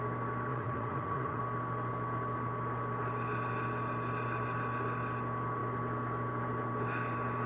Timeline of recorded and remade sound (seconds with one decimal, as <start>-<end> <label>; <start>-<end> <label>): 0.0-0.5 recorded; 0.5-1.4 remade; 1.4-7.5 recorded

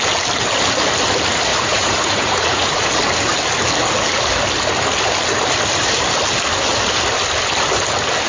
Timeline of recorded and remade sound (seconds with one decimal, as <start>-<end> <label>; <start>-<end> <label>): 0.0-1.5 recorded; 1.5-2.9 remade; 2.9-8.3 recorded

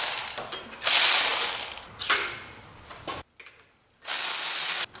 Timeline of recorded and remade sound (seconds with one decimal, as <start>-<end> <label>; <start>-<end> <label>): 0.0-5.0 recorded

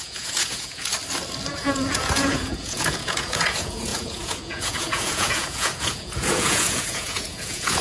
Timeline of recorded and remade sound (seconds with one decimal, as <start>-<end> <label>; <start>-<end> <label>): 0.0-0.9 remade; 0.9-1.5 recorded; 1.5-7.8 remade